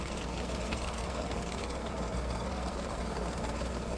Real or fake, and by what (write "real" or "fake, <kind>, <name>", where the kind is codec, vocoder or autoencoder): fake, codec, SNAC